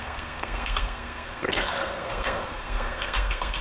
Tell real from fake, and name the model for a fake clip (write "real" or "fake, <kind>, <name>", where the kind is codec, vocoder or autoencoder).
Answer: fake, codec, SNAC